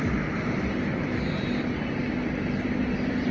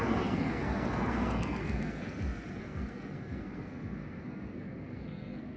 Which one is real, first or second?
first